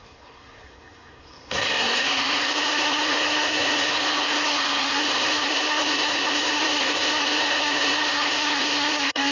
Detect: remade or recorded remade